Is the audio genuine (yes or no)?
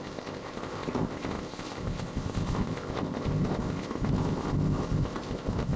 no